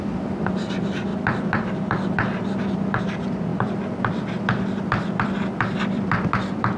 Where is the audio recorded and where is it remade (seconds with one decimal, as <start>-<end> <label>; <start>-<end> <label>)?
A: 0.0-1.1 remade; 1.1-3.0 recorded; 3.0-6.8 remade